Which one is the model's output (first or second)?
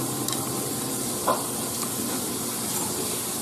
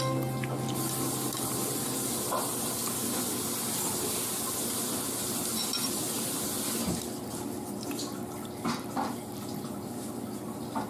first